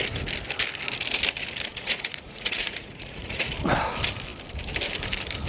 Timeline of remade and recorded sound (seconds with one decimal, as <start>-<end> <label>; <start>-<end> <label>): 0.0-1.7 recorded; 1.7-3.5 remade; 3.5-5.5 recorded